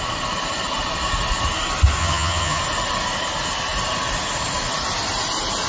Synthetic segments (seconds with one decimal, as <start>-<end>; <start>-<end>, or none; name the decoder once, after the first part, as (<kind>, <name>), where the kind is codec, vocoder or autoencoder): 2.0-2.6 (vocoder, HiFi-GAN)